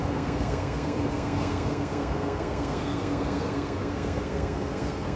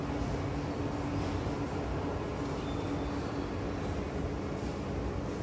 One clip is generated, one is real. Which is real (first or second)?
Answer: second